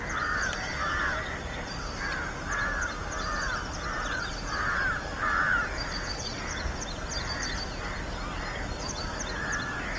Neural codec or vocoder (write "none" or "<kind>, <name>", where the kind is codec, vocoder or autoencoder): none